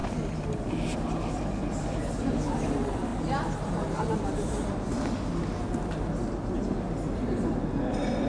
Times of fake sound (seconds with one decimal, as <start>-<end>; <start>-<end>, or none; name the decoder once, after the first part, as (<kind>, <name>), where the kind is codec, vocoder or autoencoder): none